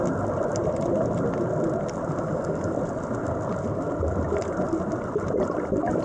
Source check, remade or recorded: recorded